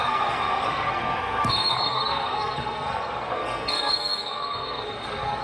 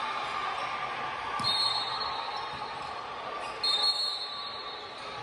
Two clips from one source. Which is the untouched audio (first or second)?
second